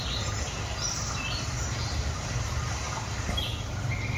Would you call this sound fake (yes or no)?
yes